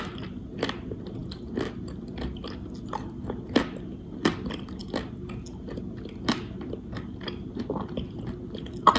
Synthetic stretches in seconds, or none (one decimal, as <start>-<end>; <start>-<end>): none